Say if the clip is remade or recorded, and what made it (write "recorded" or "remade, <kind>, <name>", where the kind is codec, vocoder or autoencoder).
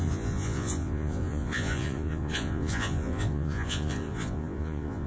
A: remade, vocoder, Vocos